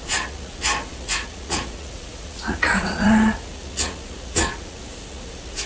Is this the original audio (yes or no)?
no